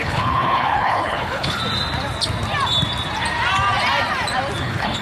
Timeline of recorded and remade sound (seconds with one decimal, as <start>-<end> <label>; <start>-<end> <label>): 0.0-1.6 remade; 1.6-4.6 recorded; 4.6-5.0 remade